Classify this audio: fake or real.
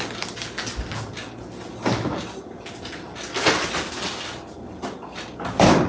real